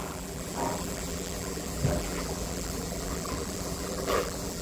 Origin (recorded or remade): remade